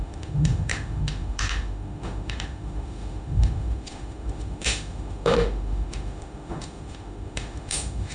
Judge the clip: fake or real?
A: fake